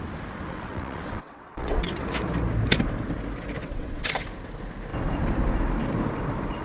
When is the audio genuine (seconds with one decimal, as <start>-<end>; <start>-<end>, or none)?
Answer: 0.0-0.5; 1.9-3.6; 4.1-6.6